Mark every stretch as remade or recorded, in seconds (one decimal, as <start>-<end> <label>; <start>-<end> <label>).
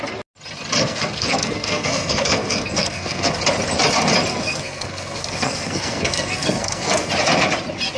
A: 0.0-0.8 recorded; 0.8-3.3 remade; 3.3-4.3 recorded; 4.3-7.1 remade; 7.1-8.0 recorded